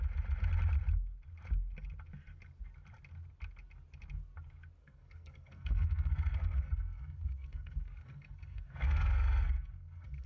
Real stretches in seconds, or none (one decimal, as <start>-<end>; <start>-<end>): 0.0-4.8